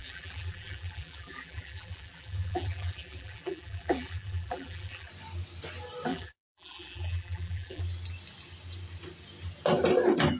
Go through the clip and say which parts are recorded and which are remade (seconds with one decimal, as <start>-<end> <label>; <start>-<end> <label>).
0.0-5.1 remade; 5.1-6.1 recorded; 6.1-7.8 remade; 7.8-10.4 recorded